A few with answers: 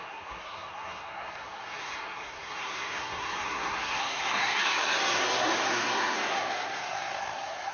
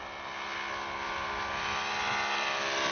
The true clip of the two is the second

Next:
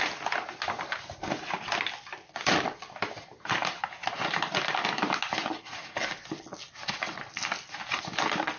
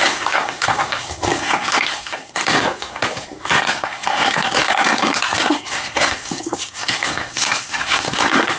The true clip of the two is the first